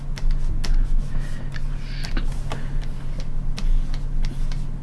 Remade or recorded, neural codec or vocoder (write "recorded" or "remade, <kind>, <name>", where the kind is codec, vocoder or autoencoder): recorded